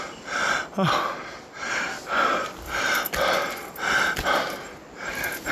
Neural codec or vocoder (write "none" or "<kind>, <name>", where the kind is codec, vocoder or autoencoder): vocoder, BigVGAN v2